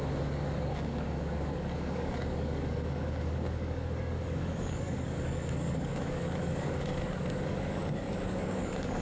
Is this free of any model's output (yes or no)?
no